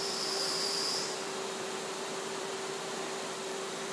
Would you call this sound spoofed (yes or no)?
yes